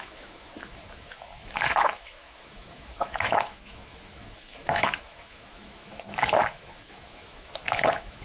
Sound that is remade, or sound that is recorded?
remade